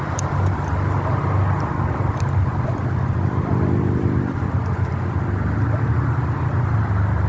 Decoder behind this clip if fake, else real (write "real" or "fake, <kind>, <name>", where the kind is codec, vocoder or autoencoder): real